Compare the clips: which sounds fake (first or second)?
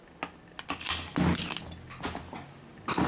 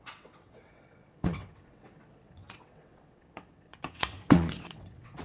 second